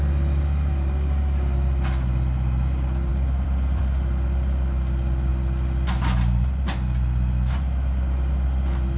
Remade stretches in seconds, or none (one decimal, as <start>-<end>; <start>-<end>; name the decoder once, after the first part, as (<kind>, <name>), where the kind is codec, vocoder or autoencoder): 3.1-3.8 (vocoder, BigVGAN v2)